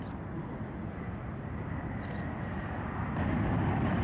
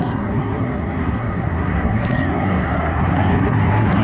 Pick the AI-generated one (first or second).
second